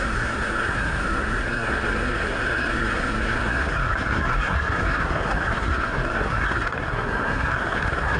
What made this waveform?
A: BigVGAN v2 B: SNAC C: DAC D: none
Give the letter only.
B